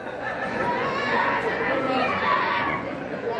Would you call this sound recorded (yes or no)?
no